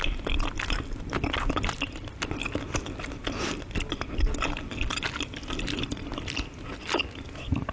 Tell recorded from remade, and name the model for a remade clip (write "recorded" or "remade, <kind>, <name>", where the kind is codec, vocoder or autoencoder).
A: recorded